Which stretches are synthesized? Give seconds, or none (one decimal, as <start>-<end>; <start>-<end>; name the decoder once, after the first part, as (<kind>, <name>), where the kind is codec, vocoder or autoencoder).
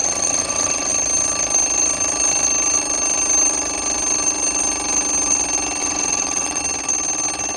0.0-0.9 (vocoder, WaveNeXt); 5.8-6.6